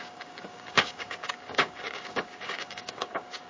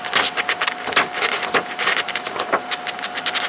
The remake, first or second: first